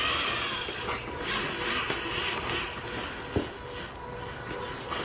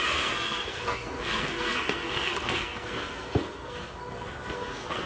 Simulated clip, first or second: second